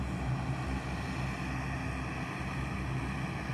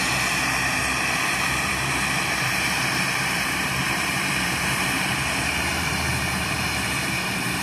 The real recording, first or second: first